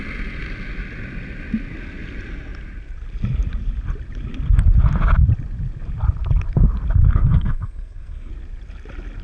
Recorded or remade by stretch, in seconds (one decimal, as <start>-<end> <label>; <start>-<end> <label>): 0.0-7.1 recorded; 7.1-8.3 remade; 8.3-9.2 recorded